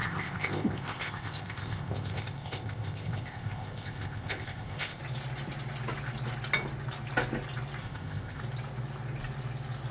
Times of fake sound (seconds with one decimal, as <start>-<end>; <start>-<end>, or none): 0.0-5.0; 7.8-8.4